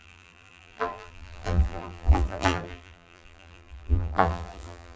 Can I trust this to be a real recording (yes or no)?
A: no